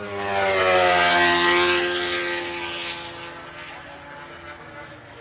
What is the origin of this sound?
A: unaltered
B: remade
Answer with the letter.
A